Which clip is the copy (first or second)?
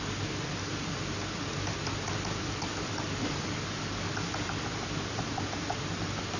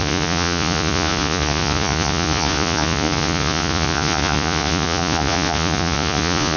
second